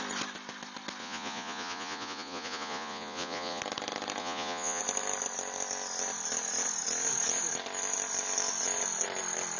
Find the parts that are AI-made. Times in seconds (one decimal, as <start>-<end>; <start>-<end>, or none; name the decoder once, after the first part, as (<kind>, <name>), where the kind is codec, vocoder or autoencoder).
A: 1.0-3.6 (vocoder, Vocos); 4.2-4.8